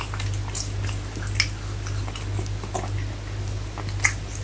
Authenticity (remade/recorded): recorded